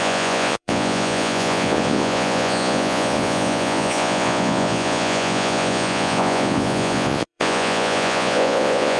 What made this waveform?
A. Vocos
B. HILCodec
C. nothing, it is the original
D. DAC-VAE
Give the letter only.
A